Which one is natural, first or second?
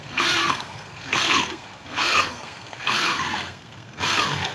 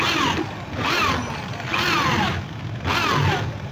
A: second